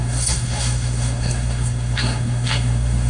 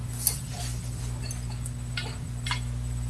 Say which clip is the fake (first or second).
first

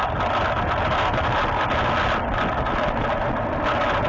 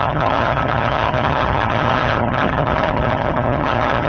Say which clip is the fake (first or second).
second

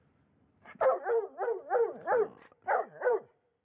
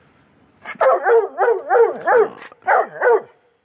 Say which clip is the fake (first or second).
first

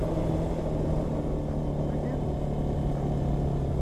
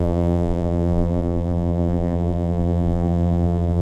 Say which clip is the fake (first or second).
second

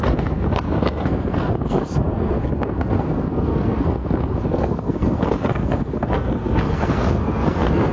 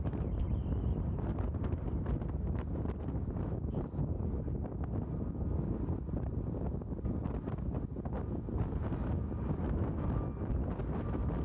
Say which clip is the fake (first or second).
first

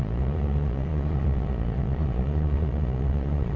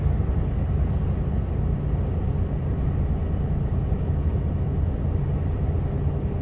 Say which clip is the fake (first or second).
first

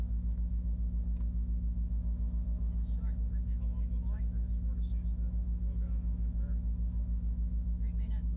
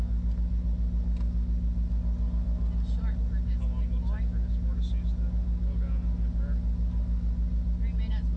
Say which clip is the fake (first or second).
first